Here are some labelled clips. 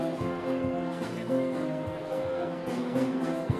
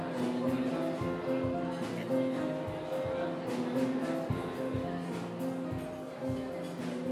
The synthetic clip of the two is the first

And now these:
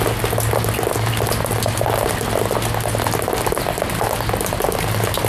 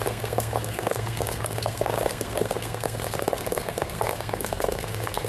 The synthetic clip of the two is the second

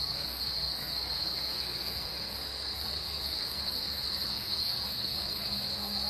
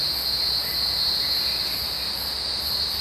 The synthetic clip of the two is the first